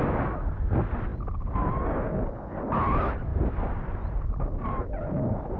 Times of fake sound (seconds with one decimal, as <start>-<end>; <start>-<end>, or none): 3.3-4.9